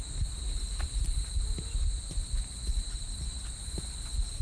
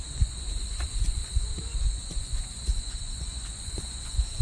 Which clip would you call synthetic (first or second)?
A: second